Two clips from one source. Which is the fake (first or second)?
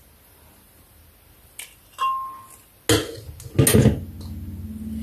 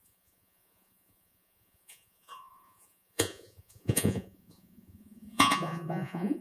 second